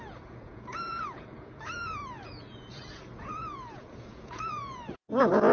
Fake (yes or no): yes